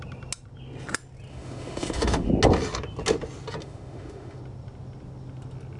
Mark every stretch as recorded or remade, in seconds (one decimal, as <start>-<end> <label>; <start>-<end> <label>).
0.0-1.3 recorded; 1.3-2.3 remade; 2.3-3.6 recorded; 3.6-4.4 remade; 4.4-5.8 recorded